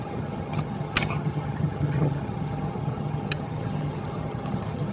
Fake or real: fake